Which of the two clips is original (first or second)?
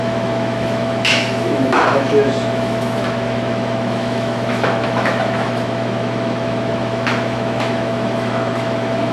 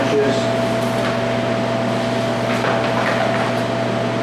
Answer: second